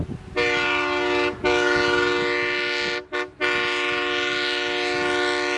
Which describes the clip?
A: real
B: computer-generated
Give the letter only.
A